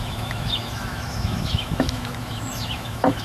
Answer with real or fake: fake